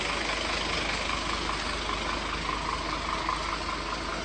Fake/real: real